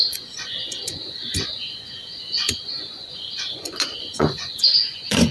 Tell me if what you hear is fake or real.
fake